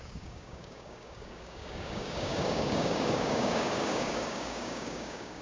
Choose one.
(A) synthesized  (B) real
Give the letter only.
A